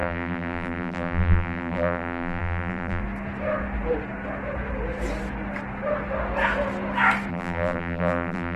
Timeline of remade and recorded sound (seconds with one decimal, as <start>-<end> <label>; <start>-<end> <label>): 0.0-3.0 remade; 3.0-7.3 recorded; 7.3-8.6 remade

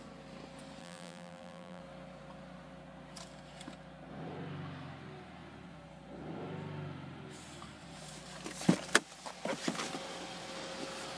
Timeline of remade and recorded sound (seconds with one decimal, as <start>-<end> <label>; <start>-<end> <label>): 0.0-0.8 recorded; 0.8-1.8 remade; 1.8-11.2 recorded

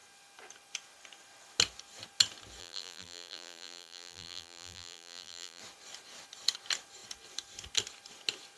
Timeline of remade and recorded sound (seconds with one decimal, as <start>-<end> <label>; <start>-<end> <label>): 0.0-2.6 recorded; 2.6-5.6 remade; 5.6-8.6 recorded

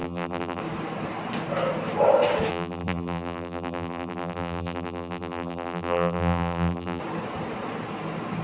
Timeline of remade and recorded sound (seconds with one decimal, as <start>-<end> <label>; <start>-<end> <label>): 0.0-0.6 remade; 0.6-2.5 recorded; 2.5-7.0 remade; 7.0-8.4 recorded